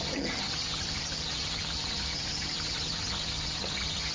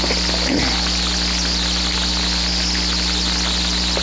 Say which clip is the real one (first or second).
second